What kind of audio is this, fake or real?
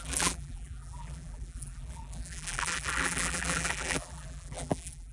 fake